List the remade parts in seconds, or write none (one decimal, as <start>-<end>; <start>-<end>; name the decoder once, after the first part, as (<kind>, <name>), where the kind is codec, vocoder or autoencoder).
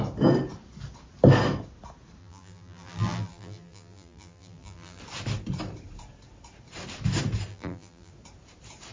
2.2-5.0 (vocoder, BigVGAN v2); 7.5-8.1